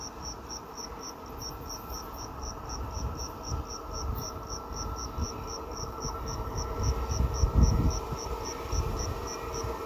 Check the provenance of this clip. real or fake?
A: real